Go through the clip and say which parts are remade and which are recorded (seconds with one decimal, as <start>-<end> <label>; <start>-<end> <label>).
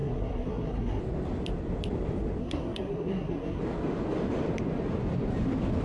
0.0-1.0 remade; 1.0-2.4 recorded; 2.4-3.6 remade; 3.6-5.8 recorded